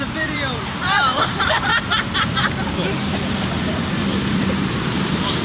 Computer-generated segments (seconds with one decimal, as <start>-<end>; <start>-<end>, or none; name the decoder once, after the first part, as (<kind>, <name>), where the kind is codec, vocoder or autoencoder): 0.0-1.7 (vocoder, BigVGAN v2); 4.2-5.4

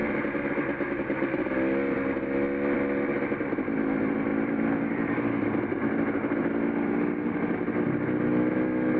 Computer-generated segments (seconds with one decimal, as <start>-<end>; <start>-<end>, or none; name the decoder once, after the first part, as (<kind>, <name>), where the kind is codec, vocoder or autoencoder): 0.0-1.4 (vocoder, BigVGAN v2)

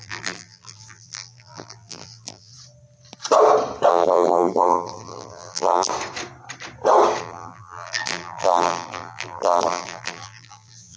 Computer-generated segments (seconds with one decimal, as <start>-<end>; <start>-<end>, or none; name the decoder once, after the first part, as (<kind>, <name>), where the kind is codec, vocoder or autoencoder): 0.0-2.5 (vocoder, BigVGAN v2); 3.9-5.9; 7.2-11.0

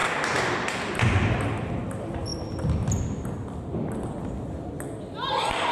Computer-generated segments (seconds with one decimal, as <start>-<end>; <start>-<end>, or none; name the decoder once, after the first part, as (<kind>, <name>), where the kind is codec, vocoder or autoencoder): none

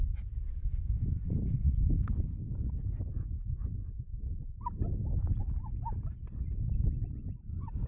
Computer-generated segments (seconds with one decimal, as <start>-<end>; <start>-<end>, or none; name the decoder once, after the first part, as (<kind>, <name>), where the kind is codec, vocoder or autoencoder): 0.7-2.7 (vocoder, BigVGAN v2)

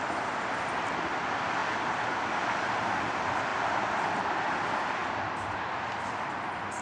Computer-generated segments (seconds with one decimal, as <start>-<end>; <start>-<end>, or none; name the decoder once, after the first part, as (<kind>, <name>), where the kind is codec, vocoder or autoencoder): 0.0-1.6 (vocoder, BigVGAN v2); 2.2-6.8

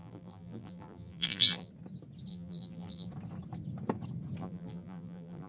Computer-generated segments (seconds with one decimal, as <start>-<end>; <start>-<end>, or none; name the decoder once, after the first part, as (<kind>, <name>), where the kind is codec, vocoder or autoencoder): 0.0-1.7 (vocoder, BigVGAN v2); 2.3-3.1; 4.4-5.5

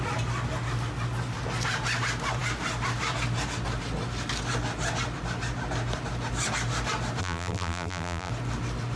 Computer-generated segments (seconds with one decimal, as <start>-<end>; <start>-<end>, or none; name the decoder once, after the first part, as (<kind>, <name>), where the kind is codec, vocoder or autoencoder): 7.2-8.3 (vocoder, BigVGAN v2)